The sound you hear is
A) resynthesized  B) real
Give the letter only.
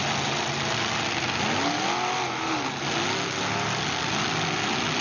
B